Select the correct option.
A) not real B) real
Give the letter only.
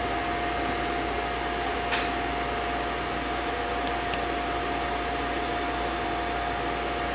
B